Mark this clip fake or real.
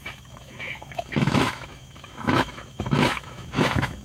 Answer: fake